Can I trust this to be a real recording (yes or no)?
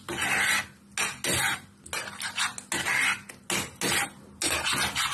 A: yes